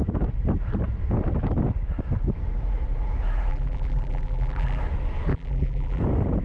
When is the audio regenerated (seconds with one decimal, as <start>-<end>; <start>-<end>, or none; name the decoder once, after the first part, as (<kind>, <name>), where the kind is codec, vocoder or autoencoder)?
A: 3.5-4.8 (vocoder, BigVGAN v2); 5.3-6.0